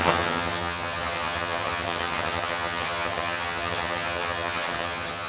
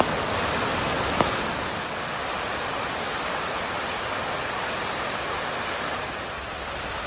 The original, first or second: second